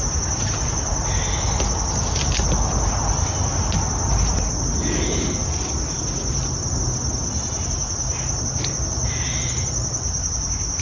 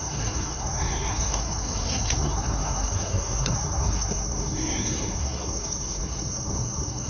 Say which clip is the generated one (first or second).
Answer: second